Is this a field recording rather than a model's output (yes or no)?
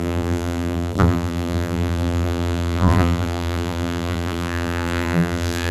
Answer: no